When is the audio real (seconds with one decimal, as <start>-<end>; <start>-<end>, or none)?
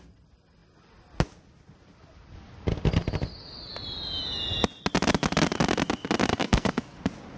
0.0-6.3; 7.0-7.4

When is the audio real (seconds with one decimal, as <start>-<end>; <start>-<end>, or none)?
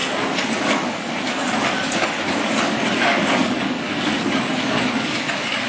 none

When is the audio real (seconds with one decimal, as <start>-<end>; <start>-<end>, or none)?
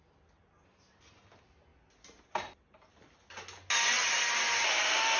0.0-5.2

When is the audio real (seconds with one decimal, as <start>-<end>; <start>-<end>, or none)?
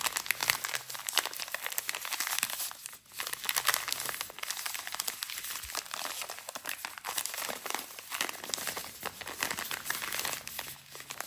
0.0-11.3